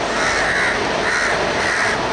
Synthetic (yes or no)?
no